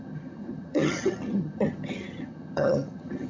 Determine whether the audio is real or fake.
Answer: fake